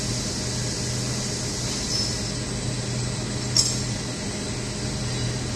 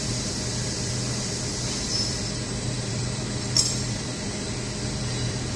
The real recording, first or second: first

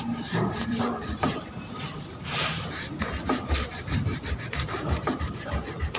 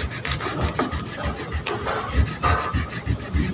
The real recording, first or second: second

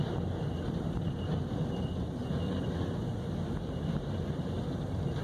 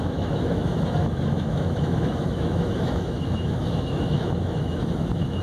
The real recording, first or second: first